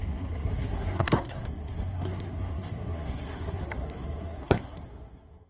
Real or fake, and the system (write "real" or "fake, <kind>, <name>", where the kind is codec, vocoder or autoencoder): fake, codec, SNAC